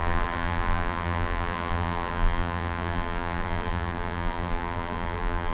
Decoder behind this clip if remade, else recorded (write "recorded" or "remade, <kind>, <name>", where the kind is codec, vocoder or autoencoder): remade, vocoder, BigVGAN v2